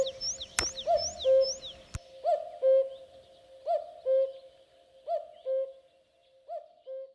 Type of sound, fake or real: real